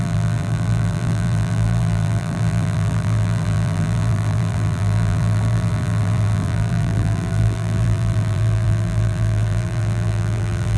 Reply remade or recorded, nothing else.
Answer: remade